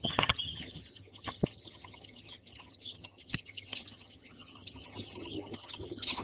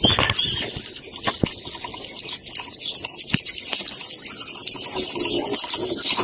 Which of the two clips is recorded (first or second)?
second